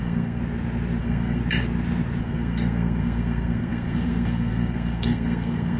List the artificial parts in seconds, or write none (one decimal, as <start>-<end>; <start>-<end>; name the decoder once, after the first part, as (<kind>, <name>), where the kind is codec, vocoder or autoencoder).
0.0-0.4 (codec, SNAC); 1.0-1.4; 2.2-5.8